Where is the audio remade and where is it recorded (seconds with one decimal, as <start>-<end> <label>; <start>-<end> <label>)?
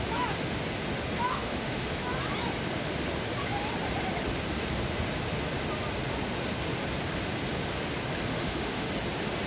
0.0-1.3 recorded; 1.3-1.9 remade; 1.9-8.3 recorded; 8.3-8.9 remade; 8.9-9.5 recorded